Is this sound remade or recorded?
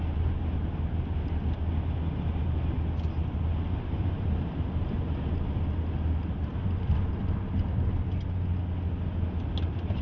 recorded